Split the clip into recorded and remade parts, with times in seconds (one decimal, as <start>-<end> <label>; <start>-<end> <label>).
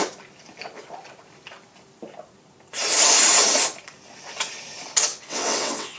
0.0-5.1 recorded; 5.1-6.0 remade